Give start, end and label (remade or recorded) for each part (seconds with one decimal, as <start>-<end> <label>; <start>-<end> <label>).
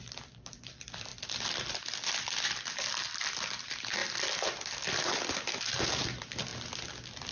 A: 0.0-6.5 remade; 6.5-7.3 recorded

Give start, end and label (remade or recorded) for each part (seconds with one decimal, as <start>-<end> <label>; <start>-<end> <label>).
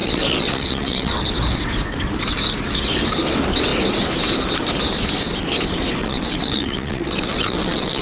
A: 0.0-1.2 remade; 1.2-6.0 recorded; 6.0-8.0 remade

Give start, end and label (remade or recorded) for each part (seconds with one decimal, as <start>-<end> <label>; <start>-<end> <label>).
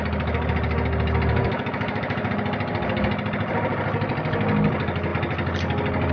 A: 0.0-1.4 recorded; 1.4-2.3 remade; 2.3-6.1 recorded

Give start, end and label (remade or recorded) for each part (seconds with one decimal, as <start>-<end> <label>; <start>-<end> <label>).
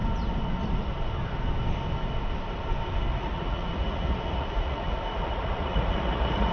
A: 0.0-3.1 recorded; 3.1-6.5 remade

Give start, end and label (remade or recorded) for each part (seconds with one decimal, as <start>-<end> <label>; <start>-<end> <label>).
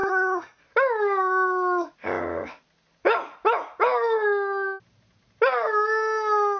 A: 0.0-0.6 remade; 0.6-6.6 recorded